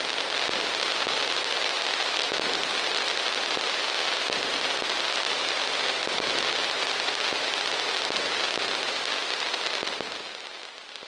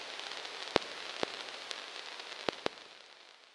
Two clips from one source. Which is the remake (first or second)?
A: second